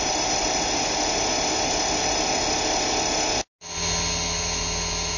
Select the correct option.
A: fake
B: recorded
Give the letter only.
B